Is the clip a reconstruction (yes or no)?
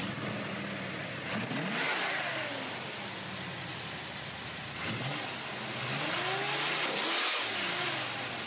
no